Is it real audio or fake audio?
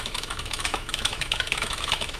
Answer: fake